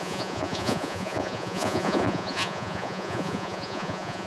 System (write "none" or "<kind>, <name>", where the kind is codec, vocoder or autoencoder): vocoder, Vocos